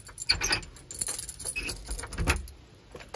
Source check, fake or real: real